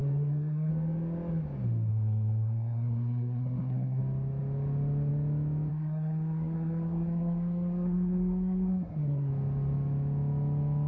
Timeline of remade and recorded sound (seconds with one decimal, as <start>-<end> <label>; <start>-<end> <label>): 0.0-0.7 remade; 0.7-1.9 recorded; 1.9-4.0 remade; 4.0-5.7 recorded; 5.7-9.3 remade; 9.3-10.9 recorded